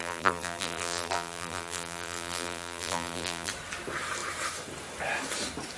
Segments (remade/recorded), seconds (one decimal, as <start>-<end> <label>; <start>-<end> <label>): 0.0-3.5 remade; 3.5-5.8 recorded